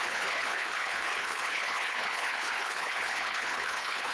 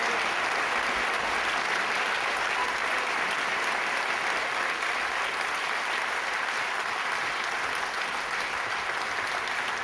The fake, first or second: first